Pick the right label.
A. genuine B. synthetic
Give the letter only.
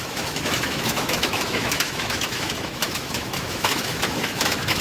B